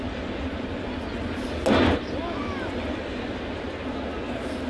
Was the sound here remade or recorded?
recorded